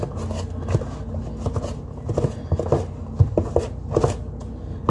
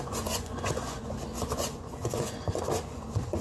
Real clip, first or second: first